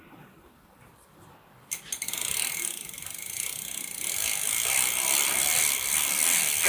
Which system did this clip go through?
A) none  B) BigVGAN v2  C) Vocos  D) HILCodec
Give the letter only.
B